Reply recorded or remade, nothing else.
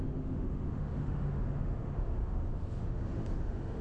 remade